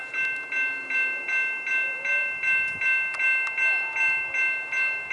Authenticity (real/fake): real